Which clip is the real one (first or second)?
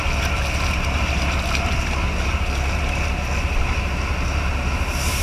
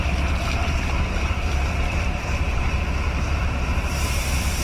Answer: first